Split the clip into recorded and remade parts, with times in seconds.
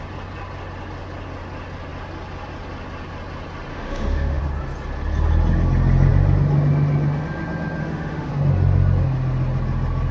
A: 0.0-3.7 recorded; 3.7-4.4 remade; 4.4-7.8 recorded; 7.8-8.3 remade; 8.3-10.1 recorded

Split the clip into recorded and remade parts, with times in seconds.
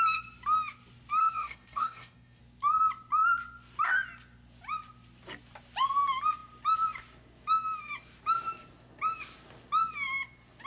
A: 0.0-1.2 recorded; 1.2-2.4 remade; 2.4-10.7 recorded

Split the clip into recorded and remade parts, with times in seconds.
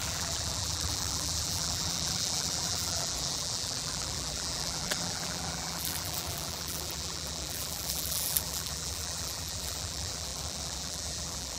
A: 0.0-11.6 remade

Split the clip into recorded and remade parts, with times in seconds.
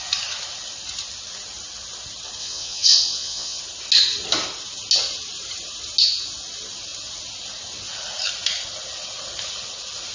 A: 0.0-2.4 recorded; 2.4-3.6 remade; 3.6-10.1 recorded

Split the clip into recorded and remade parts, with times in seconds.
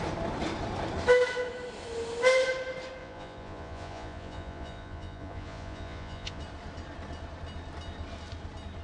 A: 0.0-3.0 recorded; 3.0-6.4 remade; 6.4-8.8 recorded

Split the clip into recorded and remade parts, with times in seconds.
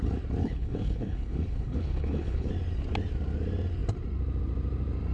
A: 0.0-0.4 recorded; 0.4-2.5 remade; 2.5-5.1 recorded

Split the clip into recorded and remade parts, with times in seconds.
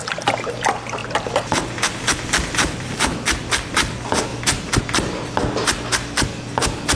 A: 0.0-1.0 recorded; 1.0-2.9 remade; 2.9-7.0 recorded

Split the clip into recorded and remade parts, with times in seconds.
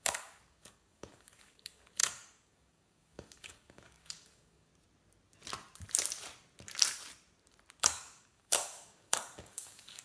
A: 0.0-4.7 remade; 4.7-7.8 recorded; 7.8-10.0 remade